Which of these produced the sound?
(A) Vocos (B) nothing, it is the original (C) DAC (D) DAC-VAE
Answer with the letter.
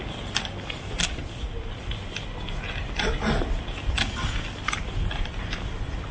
B